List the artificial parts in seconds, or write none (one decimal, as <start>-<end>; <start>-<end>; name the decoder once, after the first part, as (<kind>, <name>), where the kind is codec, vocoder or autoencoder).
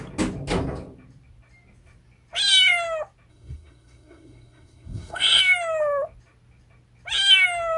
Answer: 3.3-5.4 (codec, SNAC)